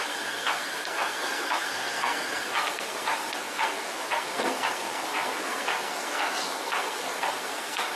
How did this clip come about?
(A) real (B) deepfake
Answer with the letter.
B